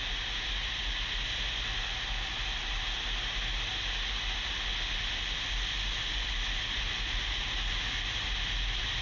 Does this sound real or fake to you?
real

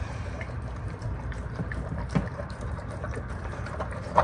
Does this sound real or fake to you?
fake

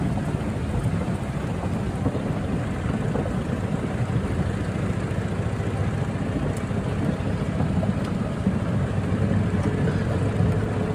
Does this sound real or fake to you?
real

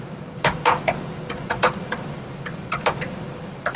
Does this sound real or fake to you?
fake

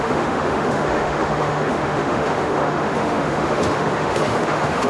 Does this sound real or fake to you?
fake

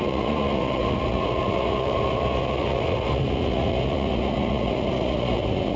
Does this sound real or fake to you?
fake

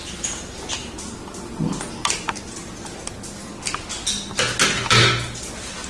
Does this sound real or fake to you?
real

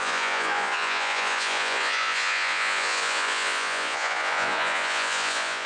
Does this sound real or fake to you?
fake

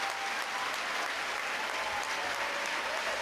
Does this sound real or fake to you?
real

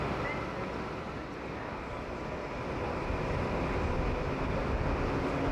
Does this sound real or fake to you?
real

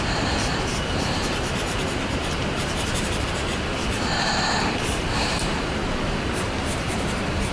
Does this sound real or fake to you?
fake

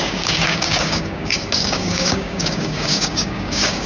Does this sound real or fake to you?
fake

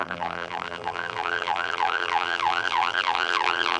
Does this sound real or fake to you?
fake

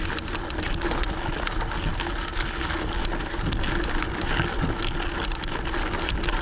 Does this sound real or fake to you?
real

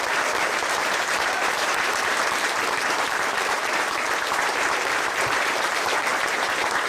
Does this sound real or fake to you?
fake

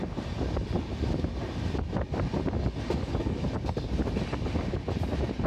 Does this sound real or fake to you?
real